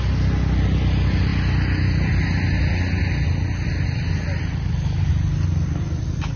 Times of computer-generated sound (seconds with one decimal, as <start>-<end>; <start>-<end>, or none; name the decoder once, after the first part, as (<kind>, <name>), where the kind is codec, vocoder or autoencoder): none